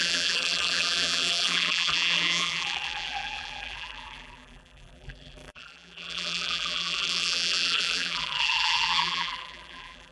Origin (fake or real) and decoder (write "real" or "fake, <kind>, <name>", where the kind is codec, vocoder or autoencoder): fake, vocoder, BigVGAN v2